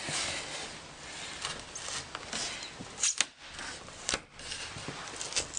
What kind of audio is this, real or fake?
real